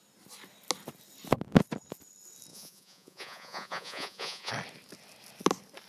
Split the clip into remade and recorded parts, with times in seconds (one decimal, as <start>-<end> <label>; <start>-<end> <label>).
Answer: 0.0-2.5 recorded; 2.5-4.5 remade; 4.5-5.9 recorded